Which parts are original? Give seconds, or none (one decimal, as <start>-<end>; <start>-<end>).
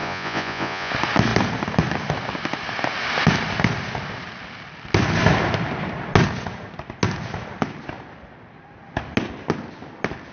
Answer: 0.9-10.3